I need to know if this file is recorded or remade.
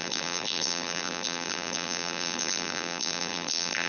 remade